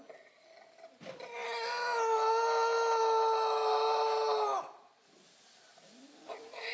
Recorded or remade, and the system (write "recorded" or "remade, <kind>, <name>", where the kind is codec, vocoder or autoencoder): recorded